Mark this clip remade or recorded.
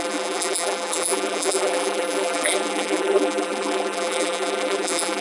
remade